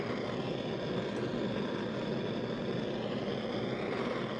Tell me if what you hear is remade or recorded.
recorded